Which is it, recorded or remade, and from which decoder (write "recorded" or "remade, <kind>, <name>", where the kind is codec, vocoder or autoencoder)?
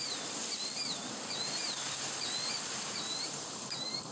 remade, vocoder, BigVGAN v2